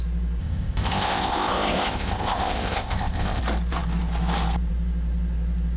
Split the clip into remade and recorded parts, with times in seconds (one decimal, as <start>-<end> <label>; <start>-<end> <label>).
0.0-0.4 recorded; 0.4-3.4 remade; 3.4-5.8 recorded